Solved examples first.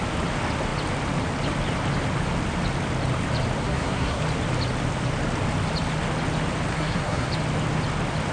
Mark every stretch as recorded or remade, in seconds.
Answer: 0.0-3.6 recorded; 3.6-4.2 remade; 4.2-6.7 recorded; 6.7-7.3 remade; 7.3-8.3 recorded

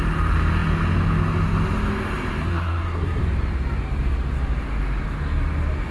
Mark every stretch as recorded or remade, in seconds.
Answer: 0.0-2.4 recorded; 2.4-3.2 remade; 3.2-5.9 recorded

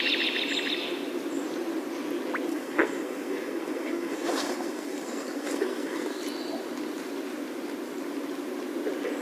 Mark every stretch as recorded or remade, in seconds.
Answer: 0.0-2.5 recorded; 2.5-6.2 remade; 6.2-9.2 recorded

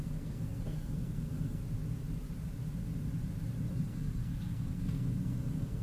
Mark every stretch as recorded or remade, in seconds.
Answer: 0.0-1.6 remade; 1.6-3.7 recorded; 3.7-5.8 remade

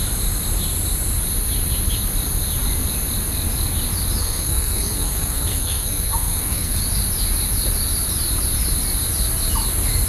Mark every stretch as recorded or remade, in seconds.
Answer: 0.0-4.2 recorded; 4.2-6.8 remade; 6.8-10.1 recorded

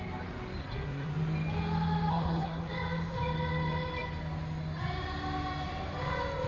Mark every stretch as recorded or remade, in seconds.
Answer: 0.0-0.6 recorded; 0.6-1.1 remade; 1.1-2.1 recorded; 2.1-2.7 remade; 2.7-6.5 recorded